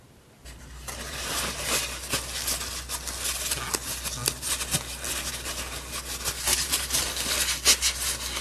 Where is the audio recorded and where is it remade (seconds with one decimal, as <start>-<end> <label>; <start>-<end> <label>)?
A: 0.0-0.4 recorded; 0.4-1.4 remade; 1.4-6.5 recorded; 6.5-7.0 remade; 7.0-8.4 recorded